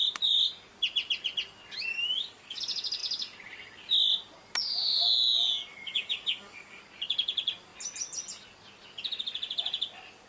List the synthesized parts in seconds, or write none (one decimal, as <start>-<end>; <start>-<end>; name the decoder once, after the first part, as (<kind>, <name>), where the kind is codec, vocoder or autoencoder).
1.9-2.6 (codec, DAC); 5.7-6.8